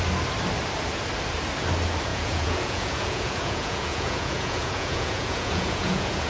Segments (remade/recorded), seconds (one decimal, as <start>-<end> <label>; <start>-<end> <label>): 0.0-2.1 recorded; 2.1-6.3 remade